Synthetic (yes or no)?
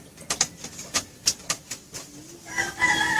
no